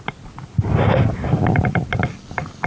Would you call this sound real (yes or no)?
yes